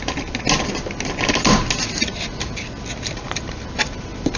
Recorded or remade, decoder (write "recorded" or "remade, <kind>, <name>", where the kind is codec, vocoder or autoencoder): recorded